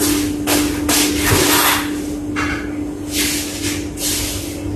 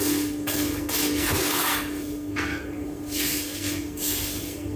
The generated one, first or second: second